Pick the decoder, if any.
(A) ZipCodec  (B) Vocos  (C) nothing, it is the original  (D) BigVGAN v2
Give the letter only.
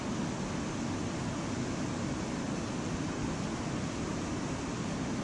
C